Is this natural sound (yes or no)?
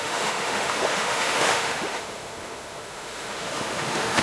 no